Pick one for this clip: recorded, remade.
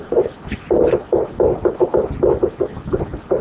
recorded